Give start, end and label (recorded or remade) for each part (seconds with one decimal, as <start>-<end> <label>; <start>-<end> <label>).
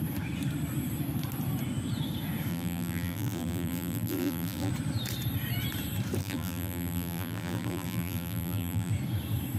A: 0.0-2.5 recorded; 2.5-4.7 remade; 4.7-6.2 recorded; 6.2-8.9 remade; 8.9-9.6 recorded